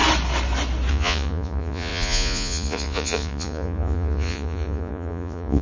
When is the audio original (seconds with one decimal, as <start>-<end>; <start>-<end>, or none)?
0.0-0.9